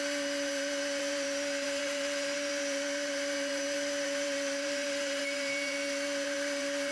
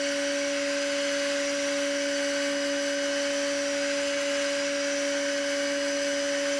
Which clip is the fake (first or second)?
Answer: first